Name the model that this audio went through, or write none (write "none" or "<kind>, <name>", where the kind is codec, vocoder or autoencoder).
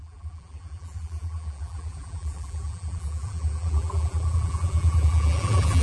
vocoder, BigVGAN v2